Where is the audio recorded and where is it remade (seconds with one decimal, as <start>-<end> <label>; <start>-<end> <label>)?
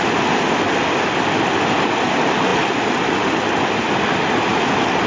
0.0-5.1 recorded